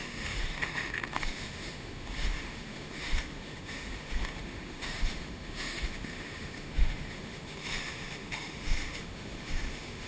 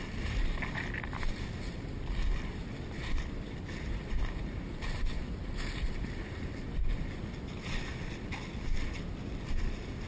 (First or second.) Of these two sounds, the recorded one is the second